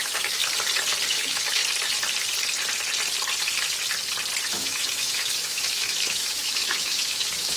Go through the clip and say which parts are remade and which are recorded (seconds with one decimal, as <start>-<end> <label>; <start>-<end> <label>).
0.0-0.4 remade; 0.4-1.1 recorded; 1.1-1.6 remade; 1.6-4.5 recorded; 4.5-7.6 remade